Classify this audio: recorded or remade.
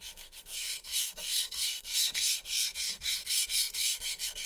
remade